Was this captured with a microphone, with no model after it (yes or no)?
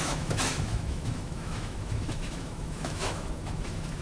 no